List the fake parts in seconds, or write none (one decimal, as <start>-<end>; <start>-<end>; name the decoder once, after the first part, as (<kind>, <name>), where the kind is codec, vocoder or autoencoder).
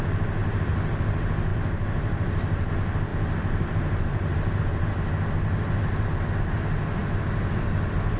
0.4-1.0 (vocoder, BigVGAN v2); 1.5-2.7; 3.1-4.6